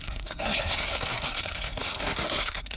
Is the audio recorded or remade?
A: remade